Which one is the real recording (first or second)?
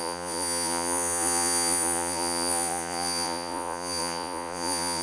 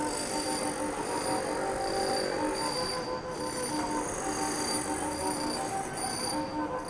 second